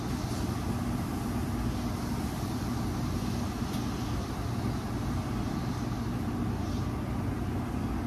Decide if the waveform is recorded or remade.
recorded